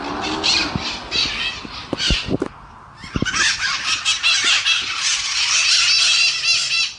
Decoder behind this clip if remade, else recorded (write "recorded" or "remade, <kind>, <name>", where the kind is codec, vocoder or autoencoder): recorded